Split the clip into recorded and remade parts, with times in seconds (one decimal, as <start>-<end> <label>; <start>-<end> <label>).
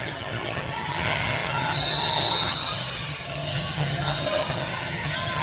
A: 0.0-5.4 remade